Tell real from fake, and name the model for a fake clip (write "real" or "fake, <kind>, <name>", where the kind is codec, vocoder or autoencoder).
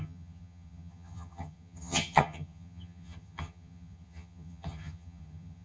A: fake, vocoder, HiFi-GAN